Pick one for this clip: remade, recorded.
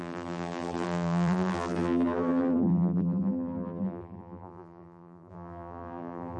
remade